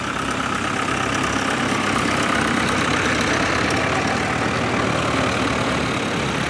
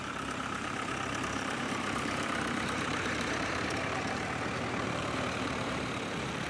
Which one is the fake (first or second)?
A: second